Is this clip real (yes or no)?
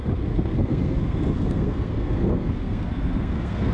no